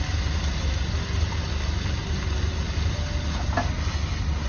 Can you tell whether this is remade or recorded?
recorded